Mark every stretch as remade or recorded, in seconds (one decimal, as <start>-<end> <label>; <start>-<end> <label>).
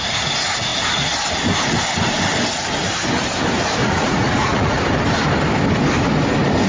0.0-3.8 recorded; 3.8-4.7 remade; 4.7-6.7 recorded